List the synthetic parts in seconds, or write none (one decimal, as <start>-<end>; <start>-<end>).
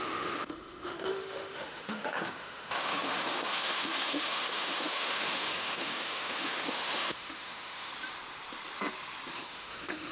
0.0-7.9; 9.3-10.1